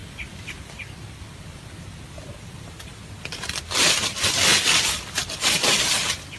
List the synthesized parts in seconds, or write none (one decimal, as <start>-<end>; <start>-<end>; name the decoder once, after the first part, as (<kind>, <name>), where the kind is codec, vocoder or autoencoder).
none

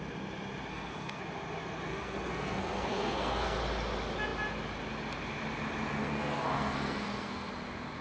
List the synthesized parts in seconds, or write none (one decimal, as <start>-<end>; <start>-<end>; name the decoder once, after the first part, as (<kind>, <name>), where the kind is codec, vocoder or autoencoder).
0.7-1.2 (codec, SNAC); 1.9-3.6; 6.0-7.5

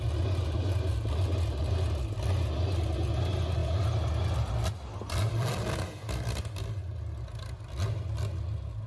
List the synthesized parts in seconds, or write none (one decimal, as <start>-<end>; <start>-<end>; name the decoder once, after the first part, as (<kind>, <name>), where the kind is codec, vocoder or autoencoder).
none